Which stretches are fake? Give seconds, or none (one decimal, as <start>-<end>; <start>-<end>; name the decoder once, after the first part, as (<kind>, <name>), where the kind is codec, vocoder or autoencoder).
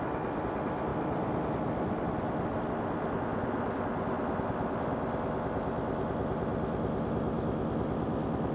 none